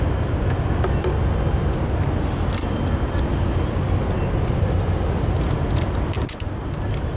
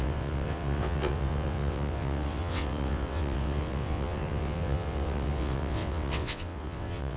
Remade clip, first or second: second